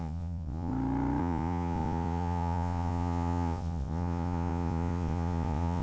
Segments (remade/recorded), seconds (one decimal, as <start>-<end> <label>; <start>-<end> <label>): 0.0-0.7 remade; 0.7-1.2 recorded; 1.2-5.8 remade

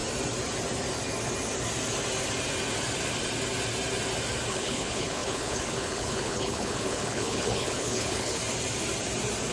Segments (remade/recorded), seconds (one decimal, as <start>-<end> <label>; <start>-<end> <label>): 0.0-4.5 recorded; 4.5-8.4 remade; 8.4-9.5 recorded

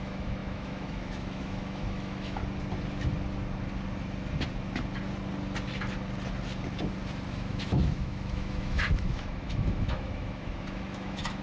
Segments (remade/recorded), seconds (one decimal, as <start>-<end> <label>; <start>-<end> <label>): 0.0-2.4 remade; 2.4-7.3 recorded; 7.3-11.4 remade

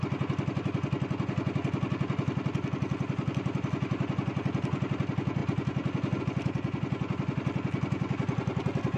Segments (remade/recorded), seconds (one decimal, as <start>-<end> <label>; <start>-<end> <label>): 0.0-9.0 recorded